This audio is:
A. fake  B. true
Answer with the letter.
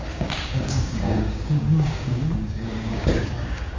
A